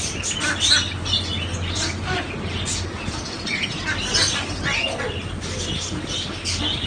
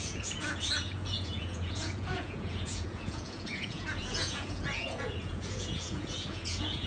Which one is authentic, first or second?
first